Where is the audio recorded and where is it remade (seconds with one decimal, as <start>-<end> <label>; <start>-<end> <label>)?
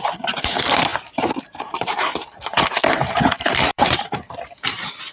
0.0-5.1 remade